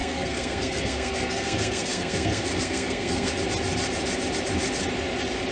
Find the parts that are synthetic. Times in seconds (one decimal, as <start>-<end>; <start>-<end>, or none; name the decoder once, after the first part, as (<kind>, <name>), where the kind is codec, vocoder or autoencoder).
0.0-3.3 (codec, SNAC)